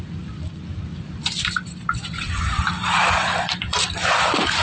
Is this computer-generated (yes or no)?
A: yes